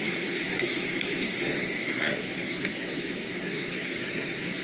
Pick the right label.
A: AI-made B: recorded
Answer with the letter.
A